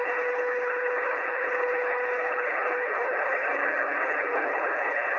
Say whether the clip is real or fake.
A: fake